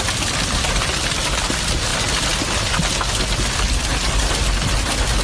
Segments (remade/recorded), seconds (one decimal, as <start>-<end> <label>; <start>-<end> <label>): 0.0-5.2 recorded